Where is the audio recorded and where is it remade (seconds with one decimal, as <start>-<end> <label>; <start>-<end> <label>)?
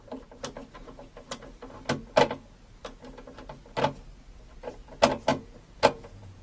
0.0-5.3 recorded; 5.3-6.4 remade